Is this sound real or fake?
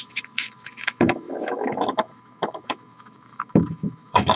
fake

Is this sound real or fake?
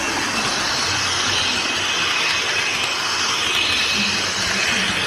real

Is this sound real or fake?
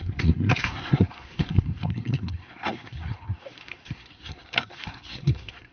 fake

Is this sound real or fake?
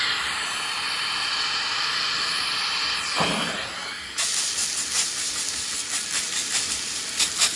real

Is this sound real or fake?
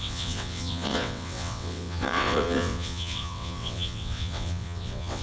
fake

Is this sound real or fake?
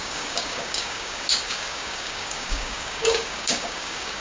fake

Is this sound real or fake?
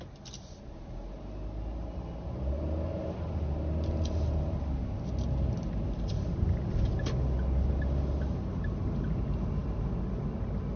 real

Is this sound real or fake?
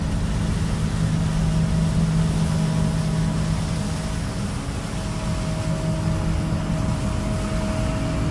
real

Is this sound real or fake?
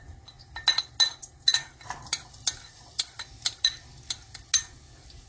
real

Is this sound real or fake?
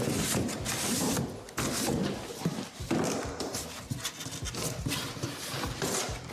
real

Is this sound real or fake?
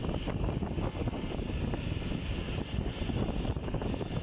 real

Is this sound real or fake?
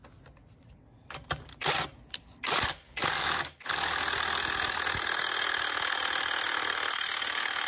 real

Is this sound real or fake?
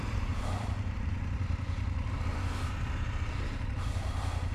fake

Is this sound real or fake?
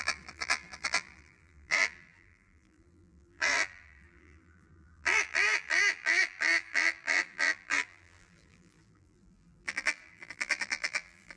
fake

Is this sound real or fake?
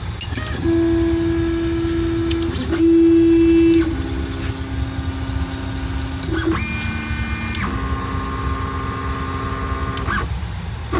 real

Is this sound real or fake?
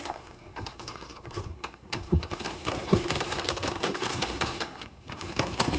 fake